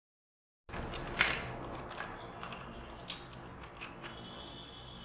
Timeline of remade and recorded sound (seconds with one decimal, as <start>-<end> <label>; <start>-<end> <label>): 0.0-5.0 recorded